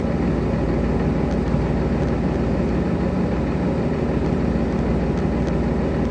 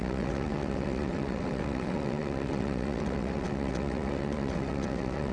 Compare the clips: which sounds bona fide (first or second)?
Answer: first